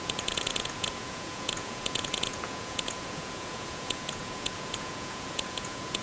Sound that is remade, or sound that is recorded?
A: remade